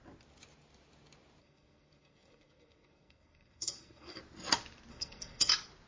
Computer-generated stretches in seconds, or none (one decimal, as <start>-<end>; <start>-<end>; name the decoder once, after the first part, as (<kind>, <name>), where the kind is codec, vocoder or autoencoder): 1.4-4.2 (codec, SNAC); 4.9-5.5